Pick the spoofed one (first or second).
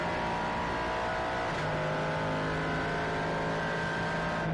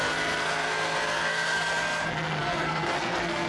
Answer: second